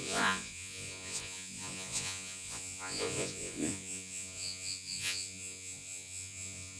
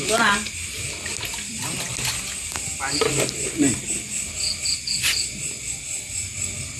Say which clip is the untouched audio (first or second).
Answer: second